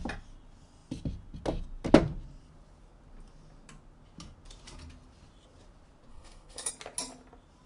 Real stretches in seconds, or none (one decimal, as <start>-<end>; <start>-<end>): 0.0-6.1; 6.7-7.7